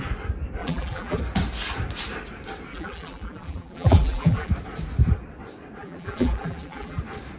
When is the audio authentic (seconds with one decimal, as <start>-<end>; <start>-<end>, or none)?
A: 0.0-0.6; 1.2-2.7; 4.5-5.8; 7.0-7.4